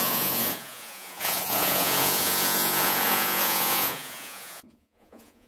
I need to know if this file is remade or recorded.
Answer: remade